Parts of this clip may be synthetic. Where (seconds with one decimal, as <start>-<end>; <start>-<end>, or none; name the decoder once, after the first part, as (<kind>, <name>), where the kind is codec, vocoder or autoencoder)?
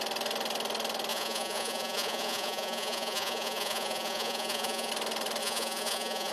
1.1-4.9 (vocoder, Vocos); 5.4-6.3